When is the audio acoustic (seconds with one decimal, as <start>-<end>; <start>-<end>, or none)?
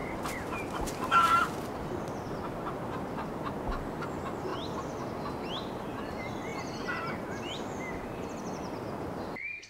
0.7-9.7